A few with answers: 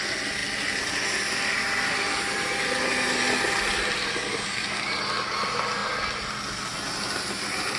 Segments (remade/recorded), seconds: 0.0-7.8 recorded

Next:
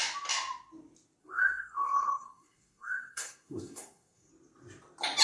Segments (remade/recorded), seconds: 0.0-1.2 recorded; 1.2-4.3 remade; 4.3-5.2 recorded